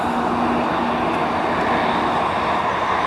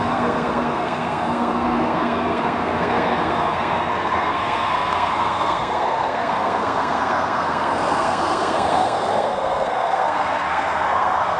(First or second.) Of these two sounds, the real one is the first